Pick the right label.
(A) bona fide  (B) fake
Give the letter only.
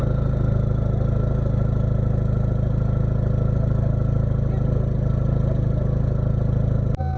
A